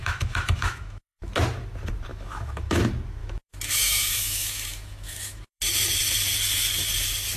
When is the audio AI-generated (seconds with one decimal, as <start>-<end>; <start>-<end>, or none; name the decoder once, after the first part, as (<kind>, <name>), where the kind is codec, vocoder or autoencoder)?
0.0-1.3 (autoencoder, DAC-VAE); 2.1-2.8; 3.2-5.6